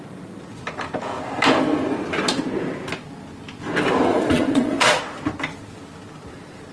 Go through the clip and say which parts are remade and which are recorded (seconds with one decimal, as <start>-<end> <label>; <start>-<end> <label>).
0.0-4.1 recorded; 4.1-5.0 remade; 5.0-6.7 recorded